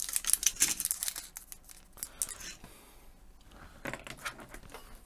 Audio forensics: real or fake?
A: real